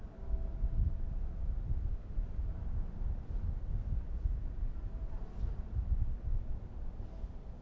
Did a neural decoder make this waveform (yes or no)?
no